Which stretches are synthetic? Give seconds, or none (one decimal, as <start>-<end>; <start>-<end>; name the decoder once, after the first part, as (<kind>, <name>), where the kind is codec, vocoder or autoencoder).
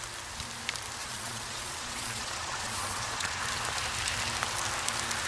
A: 1.0-3.4 (vocoder, Vocos)